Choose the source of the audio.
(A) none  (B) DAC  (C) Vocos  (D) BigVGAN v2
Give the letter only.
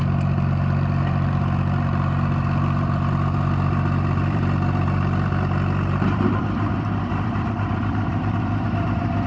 D